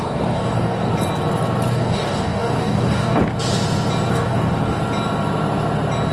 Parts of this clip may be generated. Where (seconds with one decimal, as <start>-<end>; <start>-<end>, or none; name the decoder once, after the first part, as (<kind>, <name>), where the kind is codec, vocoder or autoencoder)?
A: 0.0-0.9 (codec, DAC); 1.7-3.2; 4.1-4.8